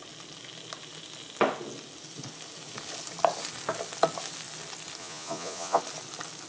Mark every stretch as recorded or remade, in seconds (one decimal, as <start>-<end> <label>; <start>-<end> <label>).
0.0-5.0 recorded; 5.0-5.8 remade; 5.8-6.5 recorded